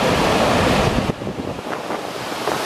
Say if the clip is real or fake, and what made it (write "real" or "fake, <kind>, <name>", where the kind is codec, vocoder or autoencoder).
real